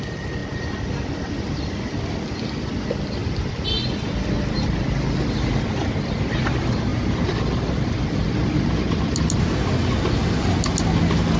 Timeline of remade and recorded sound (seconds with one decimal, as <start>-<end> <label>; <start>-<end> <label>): 0.0-11.4 recorded